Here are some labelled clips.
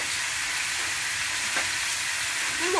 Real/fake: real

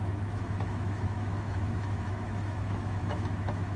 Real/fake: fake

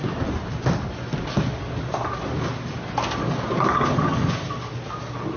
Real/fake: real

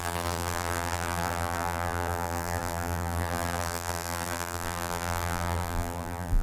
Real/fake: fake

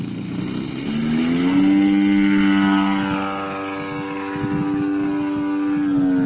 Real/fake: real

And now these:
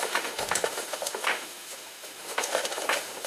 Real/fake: fake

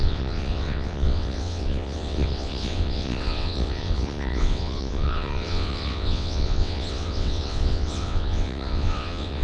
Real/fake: fake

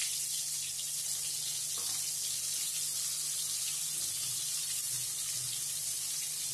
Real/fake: real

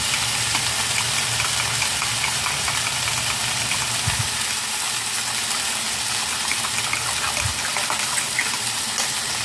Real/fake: real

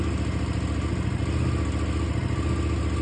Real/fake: real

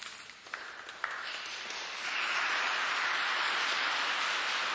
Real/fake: real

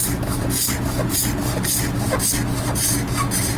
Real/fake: real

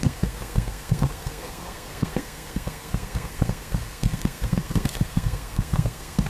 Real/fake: fake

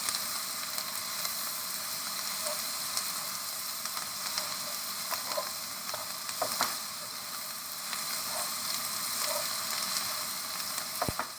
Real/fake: real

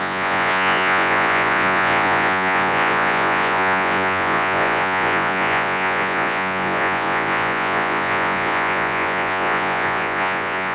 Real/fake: fake